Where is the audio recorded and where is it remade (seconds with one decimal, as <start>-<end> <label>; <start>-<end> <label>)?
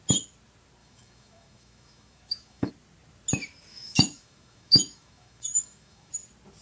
0.0-0.8 recorded; 0.8-2.7 remade; 2.7-3.7 recorded; 3.7-6.1 remade; 6.1-6.6 recorded